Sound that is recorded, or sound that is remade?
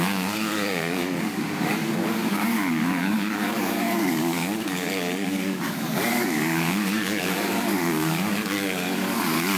remade